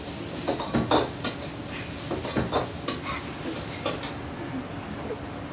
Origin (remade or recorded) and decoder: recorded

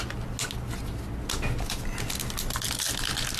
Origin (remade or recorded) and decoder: recorded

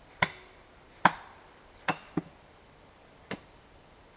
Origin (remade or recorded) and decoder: remade, vocoder, BigVGAN v2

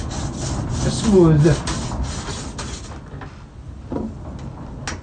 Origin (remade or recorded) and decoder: recorded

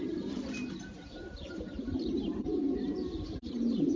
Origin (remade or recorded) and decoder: remade, vocoder, BigVGAN v2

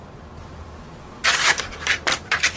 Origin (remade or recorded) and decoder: remade, vocoder, BigVGAN v2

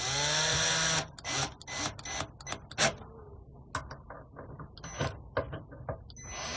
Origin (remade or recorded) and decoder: recorded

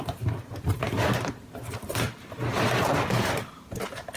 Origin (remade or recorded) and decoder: remade, vocoder, BigVGAN v2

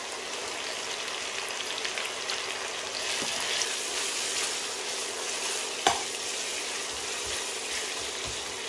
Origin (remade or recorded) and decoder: recorded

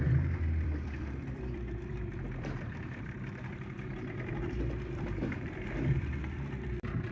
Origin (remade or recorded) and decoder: remade, vocoder, BigVGAN v2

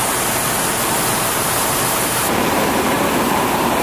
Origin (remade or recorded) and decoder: remade, vocoder, BigVGAN v2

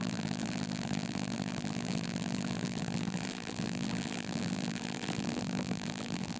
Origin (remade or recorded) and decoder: remade, vocoder, BigVGAN v2